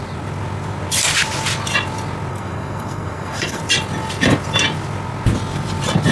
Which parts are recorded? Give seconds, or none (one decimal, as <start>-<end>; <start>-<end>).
0.0-2.3; 3.6-6.1